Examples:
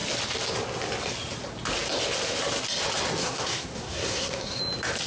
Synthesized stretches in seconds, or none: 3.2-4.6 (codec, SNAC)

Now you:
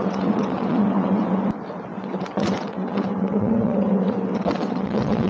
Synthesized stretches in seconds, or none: 0.0-1.4 (vocoder, WaveNeXt); 1.9-5.3

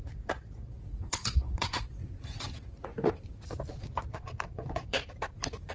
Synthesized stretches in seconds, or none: 0.0-2.0 (vocoder, Vocos); 3.7-5.0

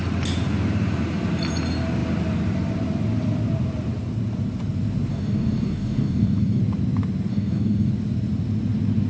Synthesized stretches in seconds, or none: 5.1-6.6 (codec, DAC); 7.3-7.9

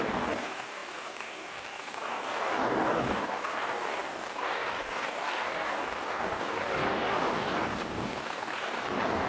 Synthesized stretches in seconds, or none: 0.0-9.3 (codec, DAC)

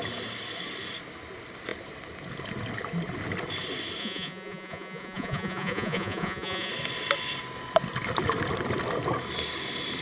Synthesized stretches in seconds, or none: 4.0-6.7 (vocoder, Vocos)